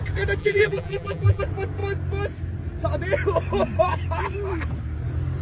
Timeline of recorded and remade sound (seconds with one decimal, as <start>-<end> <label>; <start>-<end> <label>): 0.0-0.4 recorded; 0.4-1.4 remade; 1.4-5.4 recorded